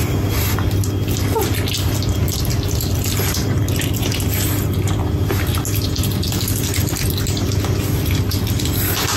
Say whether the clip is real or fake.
real